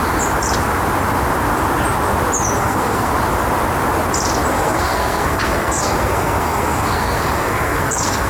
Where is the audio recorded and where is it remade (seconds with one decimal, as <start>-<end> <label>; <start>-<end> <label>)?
0.0-2.6 recorded; 2.6-3.1 remade; 3.1-4.5 recorded; 4.5-8.3 remade